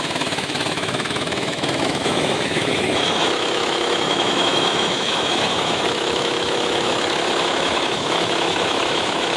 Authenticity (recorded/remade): remade